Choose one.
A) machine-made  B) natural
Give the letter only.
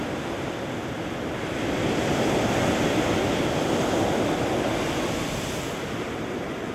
B